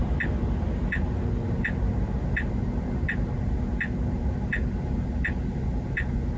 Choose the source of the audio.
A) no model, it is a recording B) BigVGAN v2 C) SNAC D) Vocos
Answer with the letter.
A